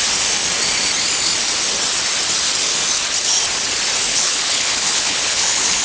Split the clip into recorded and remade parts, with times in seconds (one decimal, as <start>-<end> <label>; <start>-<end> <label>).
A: 0.0-4.1 recorded; 4.1-5.8 remade